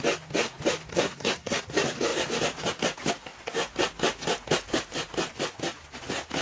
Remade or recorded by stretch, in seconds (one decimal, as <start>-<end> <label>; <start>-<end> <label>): 0.0-0.9 recorded; 0.9-1.6 remade; 1.6-6.4 recorded